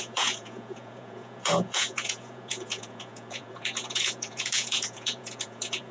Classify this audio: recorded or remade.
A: remade